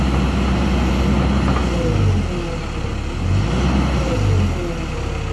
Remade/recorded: recorded